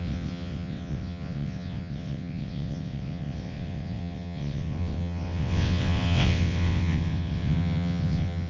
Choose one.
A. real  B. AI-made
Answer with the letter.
B